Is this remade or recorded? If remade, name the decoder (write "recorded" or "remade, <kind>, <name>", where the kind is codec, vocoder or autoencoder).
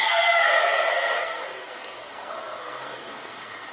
remade, codec, SNAC